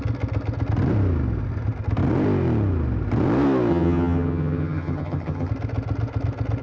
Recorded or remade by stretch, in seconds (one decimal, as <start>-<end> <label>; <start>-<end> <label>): 0.0-3.7 recorded; 3.7-5.5 remade; 5.5-6.6 recorded